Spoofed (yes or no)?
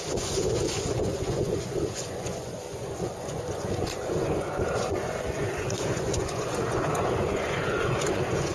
yes